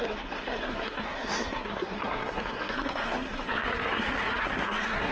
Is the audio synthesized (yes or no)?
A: yes